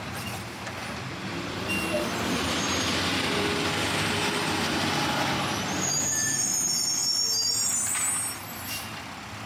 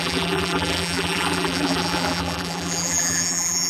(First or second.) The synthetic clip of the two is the second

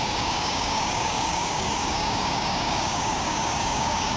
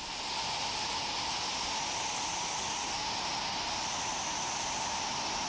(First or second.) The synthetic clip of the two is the first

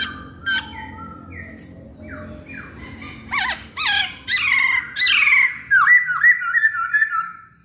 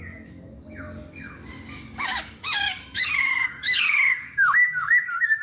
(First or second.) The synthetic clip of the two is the second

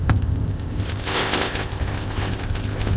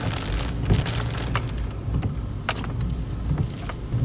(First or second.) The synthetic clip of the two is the first